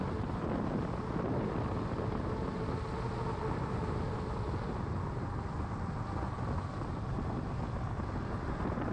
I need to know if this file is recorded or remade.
recorded